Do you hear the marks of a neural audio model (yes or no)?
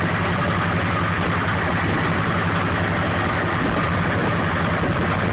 no